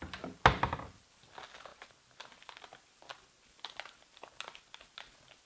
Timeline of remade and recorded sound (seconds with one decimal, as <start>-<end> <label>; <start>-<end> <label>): 0.0-5.5 recorded